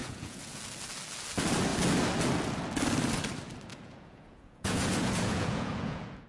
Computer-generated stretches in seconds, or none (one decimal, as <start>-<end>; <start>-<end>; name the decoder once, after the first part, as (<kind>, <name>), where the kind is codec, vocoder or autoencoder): 0.0-0.6 (vocoder, Vocos); 3.7-6.3